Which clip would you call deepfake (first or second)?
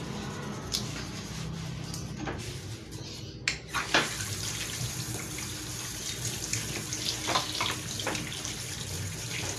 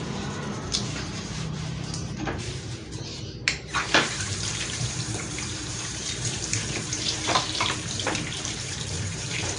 second